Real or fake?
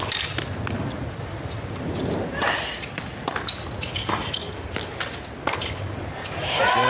real